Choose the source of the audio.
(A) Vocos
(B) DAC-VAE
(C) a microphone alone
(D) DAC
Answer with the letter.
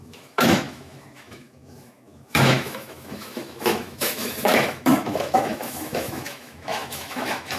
B